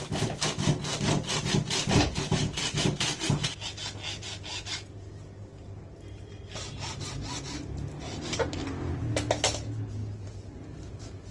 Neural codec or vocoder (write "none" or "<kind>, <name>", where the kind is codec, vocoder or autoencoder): none